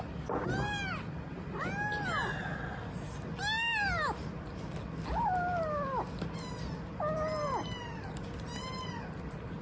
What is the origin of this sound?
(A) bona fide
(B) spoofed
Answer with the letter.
A